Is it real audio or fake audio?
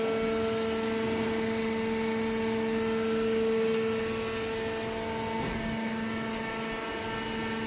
real